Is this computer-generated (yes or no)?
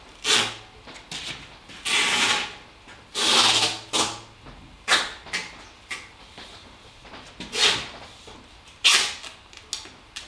no